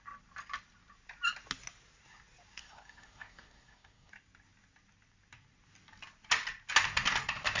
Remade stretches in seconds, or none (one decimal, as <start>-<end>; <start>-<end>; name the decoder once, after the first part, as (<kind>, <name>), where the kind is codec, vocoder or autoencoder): 2.6-4.1 (codec, SNAC)